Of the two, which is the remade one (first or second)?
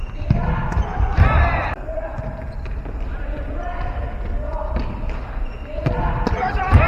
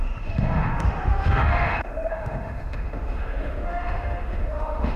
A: second